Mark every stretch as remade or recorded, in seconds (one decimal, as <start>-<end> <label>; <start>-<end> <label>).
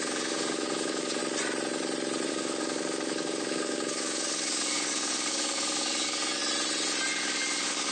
0.0-1.2 remade; 1.2-2.3 recorded; 2.3-6.4 remade; 6.4-7.1 recorded; 7.1-7.9 remade